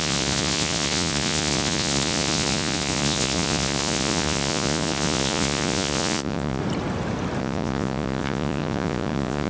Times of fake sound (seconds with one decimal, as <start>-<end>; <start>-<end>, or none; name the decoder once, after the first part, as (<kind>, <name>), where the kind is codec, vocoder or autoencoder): 0.0-6.6 (vocoder, Vocos); 7.4-9.5